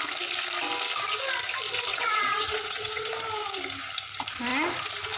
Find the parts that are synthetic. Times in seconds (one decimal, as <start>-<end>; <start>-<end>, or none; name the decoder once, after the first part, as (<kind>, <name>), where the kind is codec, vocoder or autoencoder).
1.9-3.1 (vocoder, WaveNeXt)